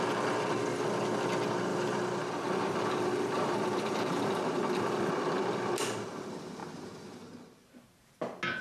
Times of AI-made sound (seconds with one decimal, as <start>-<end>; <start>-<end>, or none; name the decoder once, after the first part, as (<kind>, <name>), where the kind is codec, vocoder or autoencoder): 1.7-5.1 (vocoder, BigVGAN v2)